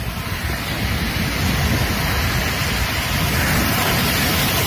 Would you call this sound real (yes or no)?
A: yes